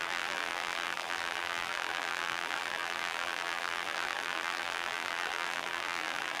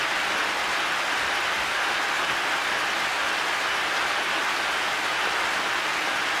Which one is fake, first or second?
first